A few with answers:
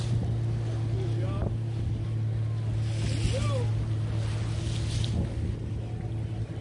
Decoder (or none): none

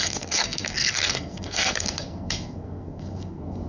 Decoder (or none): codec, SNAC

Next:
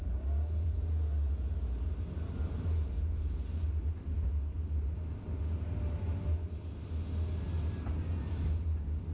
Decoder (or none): none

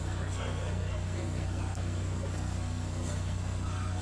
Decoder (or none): codec, SNAC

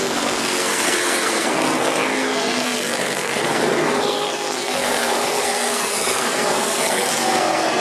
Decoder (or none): codec, SNAC